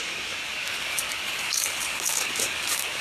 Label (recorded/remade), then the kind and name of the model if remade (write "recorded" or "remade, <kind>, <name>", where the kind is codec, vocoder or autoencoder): remade, codec, DAC